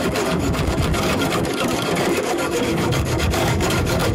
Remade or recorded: remade